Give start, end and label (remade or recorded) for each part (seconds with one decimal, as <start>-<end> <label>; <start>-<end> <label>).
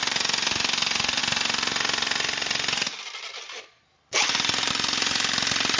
0.0-5.8 recorded